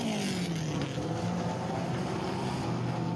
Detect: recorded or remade recorded